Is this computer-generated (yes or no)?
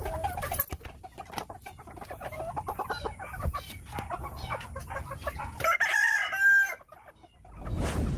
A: no